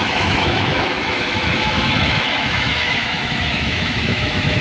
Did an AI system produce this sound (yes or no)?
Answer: yes